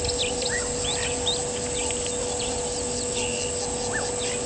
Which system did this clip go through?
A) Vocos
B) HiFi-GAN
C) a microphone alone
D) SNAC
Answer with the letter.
C